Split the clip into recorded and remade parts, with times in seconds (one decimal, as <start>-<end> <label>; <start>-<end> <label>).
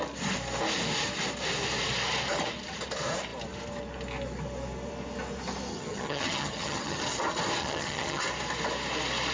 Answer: 0.0-5.7 recorded; 5.7-7.0 remade; 7.0-7.6 recorded; 7.6-8.2 remade; 8.2-9.3 recorded